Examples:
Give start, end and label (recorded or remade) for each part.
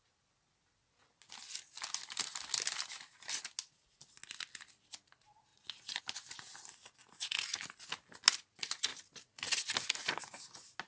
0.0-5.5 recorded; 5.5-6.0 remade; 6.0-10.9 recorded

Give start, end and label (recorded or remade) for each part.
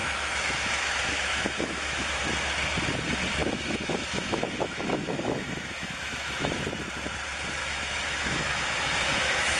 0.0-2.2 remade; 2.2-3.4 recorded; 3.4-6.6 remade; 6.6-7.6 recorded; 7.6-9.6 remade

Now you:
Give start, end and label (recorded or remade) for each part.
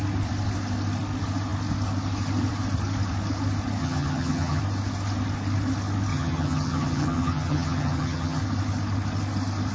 0.0-3.8 recorded; 3.8-4.6 remade; 4.6-6.1 recorded; 6.1-8.4 remade; 8.4-9.7 recorded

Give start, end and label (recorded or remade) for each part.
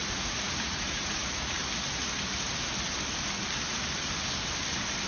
0.0-1.6 remade; 1.6-5.1 recorded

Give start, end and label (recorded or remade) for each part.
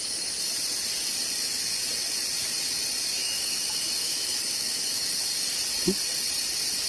0.0-3.2 recorded; 3.2-5.1 remade; 5.1-6.9 recorded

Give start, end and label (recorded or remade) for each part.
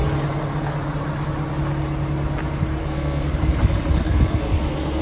0.0-2.8 recorded; 2.8-3.3 remade; 3.3-4.0 recorded; 4.0-5.0 remade